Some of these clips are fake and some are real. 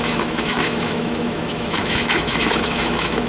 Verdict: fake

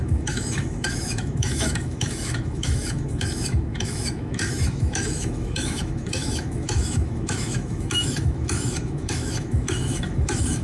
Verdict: fake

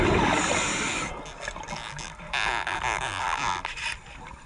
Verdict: real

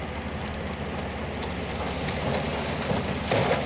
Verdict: real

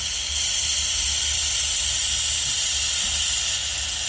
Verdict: real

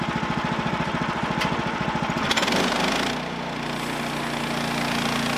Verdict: real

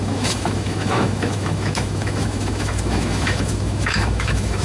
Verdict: fake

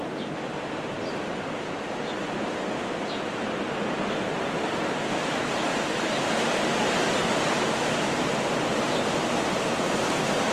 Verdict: real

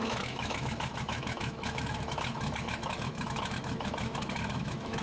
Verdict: fake